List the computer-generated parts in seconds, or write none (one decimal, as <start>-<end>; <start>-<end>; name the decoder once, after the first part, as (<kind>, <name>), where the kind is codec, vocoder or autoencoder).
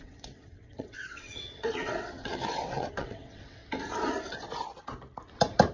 0.0-3.6 (vocoder, WaveNeXt)